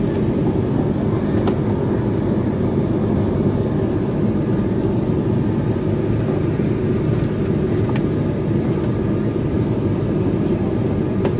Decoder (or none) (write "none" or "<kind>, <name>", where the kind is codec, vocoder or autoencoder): none